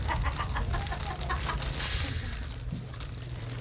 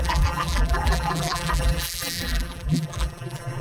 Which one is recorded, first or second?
first